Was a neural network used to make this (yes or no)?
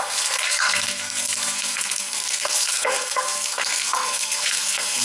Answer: yes